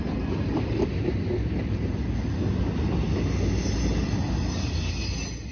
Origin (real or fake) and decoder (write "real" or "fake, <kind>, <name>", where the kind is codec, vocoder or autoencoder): real